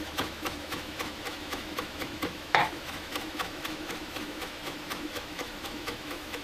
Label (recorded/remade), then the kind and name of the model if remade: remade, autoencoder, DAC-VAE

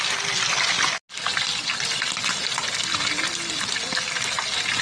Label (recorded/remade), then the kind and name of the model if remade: recorded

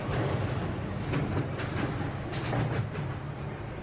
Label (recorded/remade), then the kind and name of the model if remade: recorded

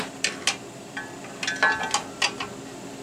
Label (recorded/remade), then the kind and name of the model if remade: recorded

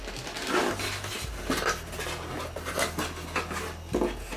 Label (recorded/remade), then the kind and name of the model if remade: recorded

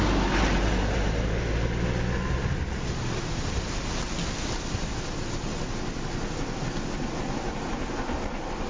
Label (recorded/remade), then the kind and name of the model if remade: recorded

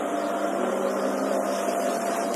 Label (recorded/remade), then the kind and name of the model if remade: recorded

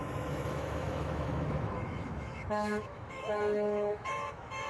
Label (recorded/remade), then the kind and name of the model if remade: remade, autoencoder, DAC-VAE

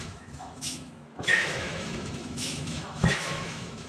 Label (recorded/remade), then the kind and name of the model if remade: remade, autoencoder, DAC-VAE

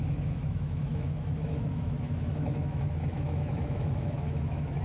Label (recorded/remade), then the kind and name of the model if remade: remade, autoencoder, DAC-VAE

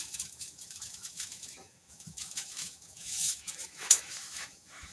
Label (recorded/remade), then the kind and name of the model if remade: remade, autoencoder, DAC-VAE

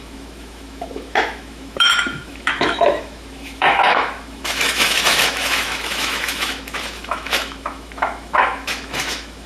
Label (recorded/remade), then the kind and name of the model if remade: remade, autoencoder, DAC-VAE